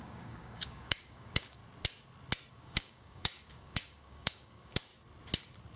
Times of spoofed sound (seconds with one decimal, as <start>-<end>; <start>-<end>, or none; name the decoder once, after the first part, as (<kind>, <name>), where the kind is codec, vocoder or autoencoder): 0.0-1.6 (codec, DAC); 2.5-4.9